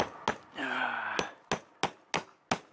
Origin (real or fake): real